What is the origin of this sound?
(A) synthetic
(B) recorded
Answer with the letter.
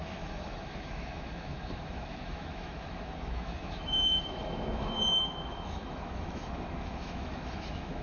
A